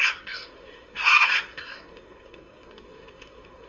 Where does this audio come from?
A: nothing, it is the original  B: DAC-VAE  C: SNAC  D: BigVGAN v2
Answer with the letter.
C